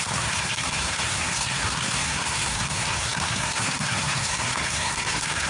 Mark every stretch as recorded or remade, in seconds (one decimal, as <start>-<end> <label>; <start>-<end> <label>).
0.0-5.5 remade